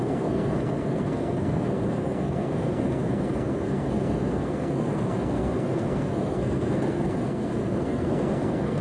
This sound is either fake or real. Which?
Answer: fake